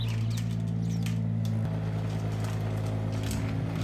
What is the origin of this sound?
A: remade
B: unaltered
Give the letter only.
B